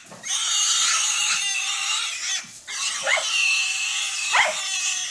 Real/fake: real